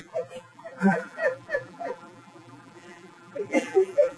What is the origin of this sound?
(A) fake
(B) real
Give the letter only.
A